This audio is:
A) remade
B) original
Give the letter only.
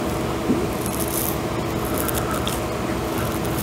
B